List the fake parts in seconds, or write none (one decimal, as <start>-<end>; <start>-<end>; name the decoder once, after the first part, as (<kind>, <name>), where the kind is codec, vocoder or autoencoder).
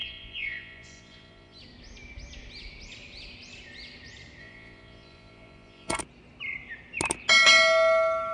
0.0-1.6 (vocoder, Vocos); 4.4-6.0